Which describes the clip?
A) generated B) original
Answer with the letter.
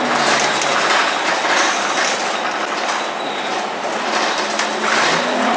B